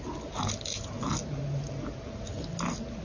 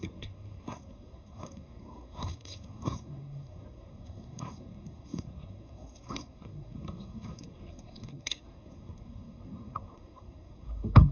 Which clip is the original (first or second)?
first